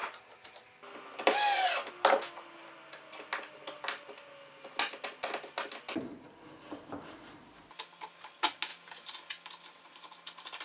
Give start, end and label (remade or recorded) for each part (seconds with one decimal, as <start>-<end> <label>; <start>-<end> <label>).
0.0-10.6 recorded